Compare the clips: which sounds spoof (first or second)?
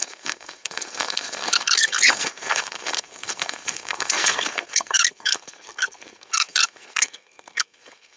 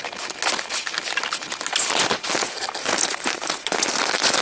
first